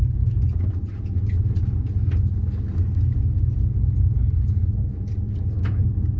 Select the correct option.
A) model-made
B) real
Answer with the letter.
B